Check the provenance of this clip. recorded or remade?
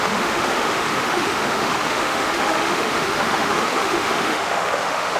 remade